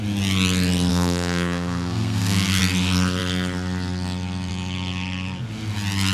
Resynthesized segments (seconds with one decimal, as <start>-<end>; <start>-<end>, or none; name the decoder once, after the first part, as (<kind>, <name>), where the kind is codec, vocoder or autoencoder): 0.9-2.6 (codec, SNAC)